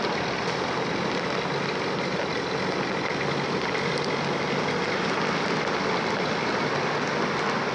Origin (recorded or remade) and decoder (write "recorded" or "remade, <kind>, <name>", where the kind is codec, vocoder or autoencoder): recorded